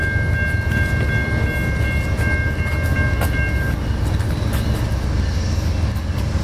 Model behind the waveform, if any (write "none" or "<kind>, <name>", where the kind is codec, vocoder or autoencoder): none